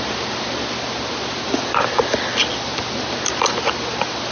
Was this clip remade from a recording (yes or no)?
no